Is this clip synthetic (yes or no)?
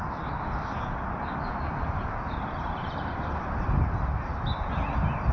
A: no